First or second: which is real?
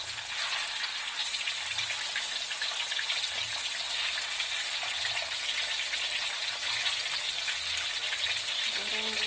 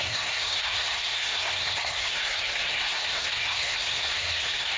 first